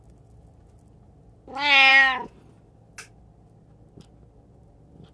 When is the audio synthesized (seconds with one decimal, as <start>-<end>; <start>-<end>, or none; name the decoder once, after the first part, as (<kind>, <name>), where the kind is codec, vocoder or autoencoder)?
none